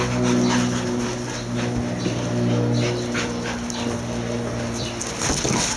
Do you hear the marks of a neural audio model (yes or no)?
no